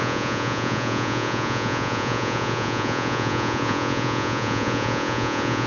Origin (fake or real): fake